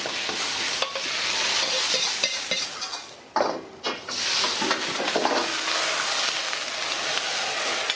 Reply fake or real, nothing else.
real